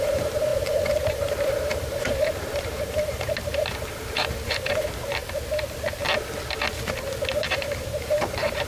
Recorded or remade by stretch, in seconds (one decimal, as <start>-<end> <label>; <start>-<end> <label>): 0.0-5.2 remade; 5.2-7.4 recorded; 7.4-8.7 remade